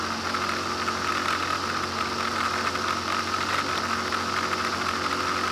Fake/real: real